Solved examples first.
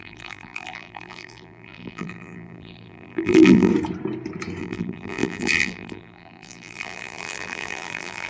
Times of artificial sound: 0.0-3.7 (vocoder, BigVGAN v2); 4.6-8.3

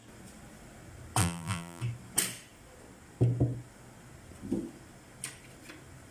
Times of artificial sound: 1.2-1.8 (vocoder, BigVGAN v2)

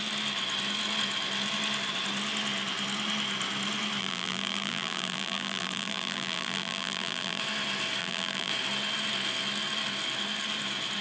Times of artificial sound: 4.0-7.4 (vocoder, BigVGAN v2); 8.0-8.5

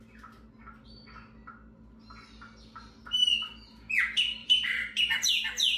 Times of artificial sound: 4.4-5.3 (vocoder, BigVGAN v2)

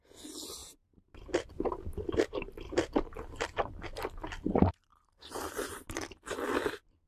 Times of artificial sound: 0.6-3.7 (vocoder, BigVGAN v2); 4.2-5.5